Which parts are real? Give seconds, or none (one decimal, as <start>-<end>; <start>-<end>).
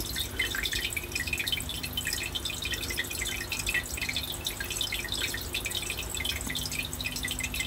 0.0-7.7